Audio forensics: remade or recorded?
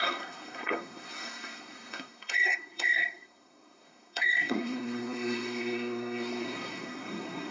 remade